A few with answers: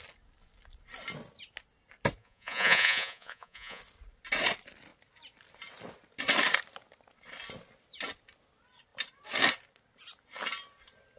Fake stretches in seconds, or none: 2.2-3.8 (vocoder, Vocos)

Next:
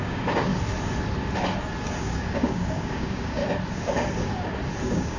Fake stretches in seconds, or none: 0.0-0.5 (codec, DAC); 2.0-3.4; 4.8-5.2

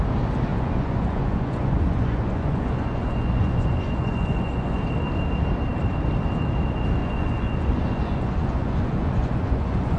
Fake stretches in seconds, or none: 0.5-4.8 (vocoder, Vocos); 7.0-10.0